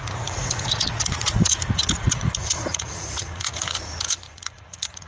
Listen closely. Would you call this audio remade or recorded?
remade